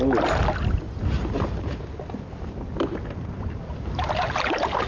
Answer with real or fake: real